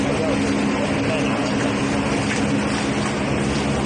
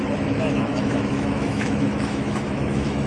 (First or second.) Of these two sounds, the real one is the first